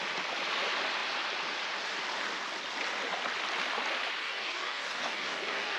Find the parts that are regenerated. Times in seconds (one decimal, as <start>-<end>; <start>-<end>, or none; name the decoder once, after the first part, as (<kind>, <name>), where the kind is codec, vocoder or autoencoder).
4.2-5.8 (codec, DAC)